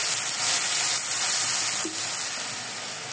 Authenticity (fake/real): real